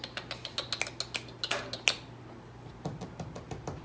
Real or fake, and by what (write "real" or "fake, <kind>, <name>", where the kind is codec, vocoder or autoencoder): real